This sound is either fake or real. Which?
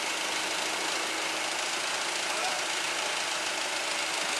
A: real